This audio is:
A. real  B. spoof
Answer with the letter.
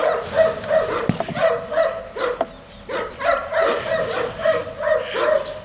A